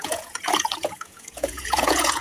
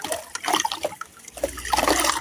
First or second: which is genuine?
second